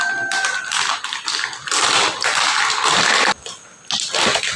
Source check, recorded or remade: recorded